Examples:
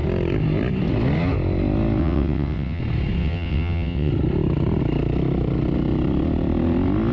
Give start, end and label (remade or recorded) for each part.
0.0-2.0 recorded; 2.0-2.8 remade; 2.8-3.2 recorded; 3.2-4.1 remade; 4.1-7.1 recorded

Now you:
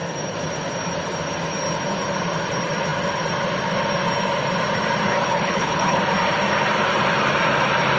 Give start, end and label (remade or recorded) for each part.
0.0-5.1 recorded; 5.1-6.0 remade; 6.0-8.0 recorded